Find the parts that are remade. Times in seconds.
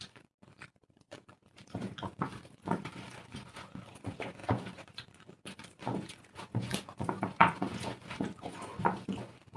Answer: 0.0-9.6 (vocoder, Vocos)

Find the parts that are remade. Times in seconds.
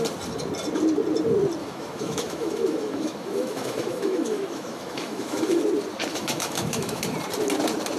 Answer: 1.6-5.6 (autoencoder, DAC-VAE); 6.1-7.0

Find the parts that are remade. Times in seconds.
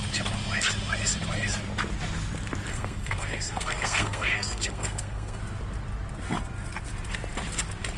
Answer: 2.7-5.4 (codec, SNAC)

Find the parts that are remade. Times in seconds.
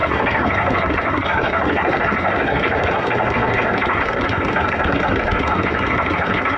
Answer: 0.0-6.6 (codec, SNAC)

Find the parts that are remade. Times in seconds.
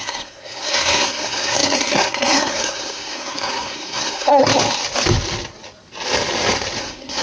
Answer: 0.0-4.4 (codec, SNAC); 6.8-7.2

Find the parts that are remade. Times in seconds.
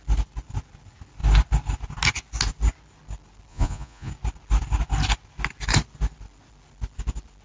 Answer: 3.5-4.1 (vocoder, Vocos)